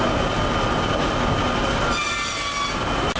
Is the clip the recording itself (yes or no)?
yes